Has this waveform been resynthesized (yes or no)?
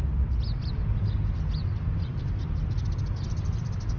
no